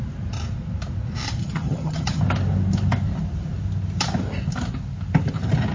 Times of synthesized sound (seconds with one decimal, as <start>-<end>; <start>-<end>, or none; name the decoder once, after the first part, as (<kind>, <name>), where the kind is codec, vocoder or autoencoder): 1.4-2.2 (vocoder, HiFi-GAN)